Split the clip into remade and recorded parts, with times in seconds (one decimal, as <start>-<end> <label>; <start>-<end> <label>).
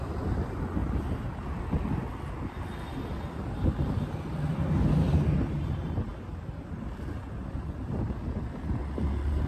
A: 0.0-9.5 recorded